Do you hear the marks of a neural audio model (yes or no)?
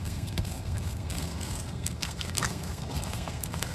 yes